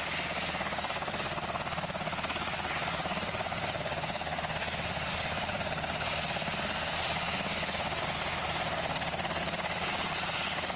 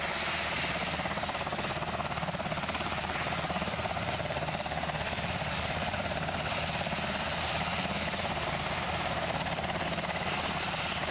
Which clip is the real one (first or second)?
first